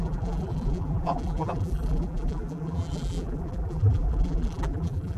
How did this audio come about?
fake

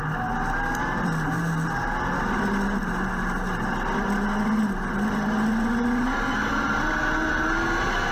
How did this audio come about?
real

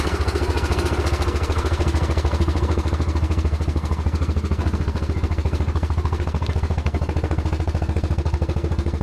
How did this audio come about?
fake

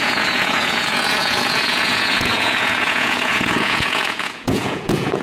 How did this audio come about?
fake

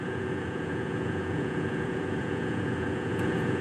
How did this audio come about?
fake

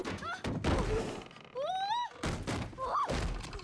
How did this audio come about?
real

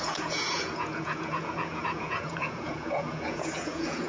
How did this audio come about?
fake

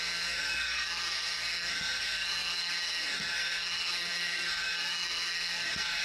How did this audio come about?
fake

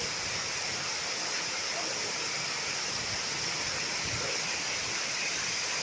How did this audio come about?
real